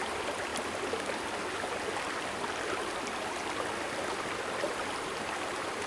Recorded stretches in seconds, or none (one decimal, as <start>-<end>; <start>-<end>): 0.0-5.9